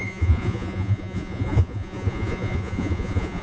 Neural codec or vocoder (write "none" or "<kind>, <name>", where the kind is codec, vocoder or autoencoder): vocoder, Vocos